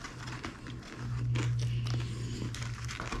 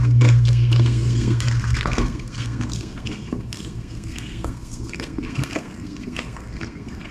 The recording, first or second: first